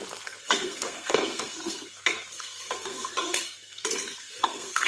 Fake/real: fake